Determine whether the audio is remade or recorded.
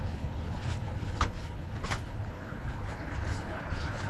remade